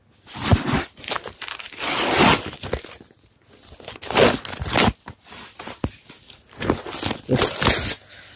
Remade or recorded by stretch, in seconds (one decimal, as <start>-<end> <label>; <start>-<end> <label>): 0.0-8.4 recorded